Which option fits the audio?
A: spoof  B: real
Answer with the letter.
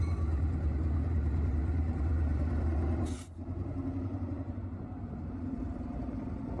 A